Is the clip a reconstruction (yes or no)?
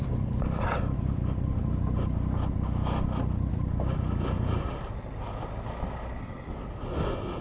no